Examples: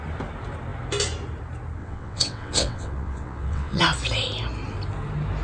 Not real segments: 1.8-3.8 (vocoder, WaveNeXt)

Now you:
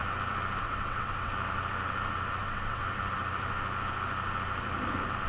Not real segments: 0.6-1.3 (vocoder, WaveNeXt); 2.4-2.8

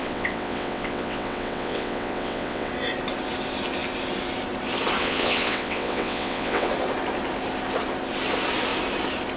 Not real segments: 0.0-2.7 (vocoder, WaveNeXt); 5.0-6.7

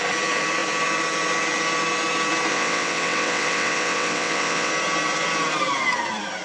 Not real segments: 2.5-4.7 (vocoder, WaveNeXt)

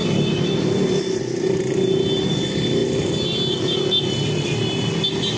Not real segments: none

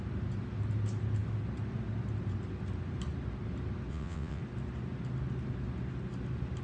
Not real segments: 3.9-4.4 (vocoder, WaveNeXt)

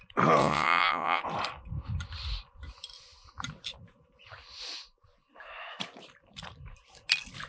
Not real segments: 0.4-1.2 (vocoder, WaveNeXt)

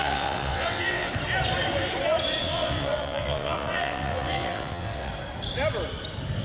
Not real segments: 0.0-1.1 (vocoder, WaveNeXt); 2.4-5.1